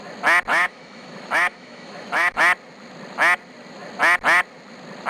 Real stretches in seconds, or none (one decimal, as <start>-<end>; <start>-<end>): 0.0-0.5; 2.4-5.1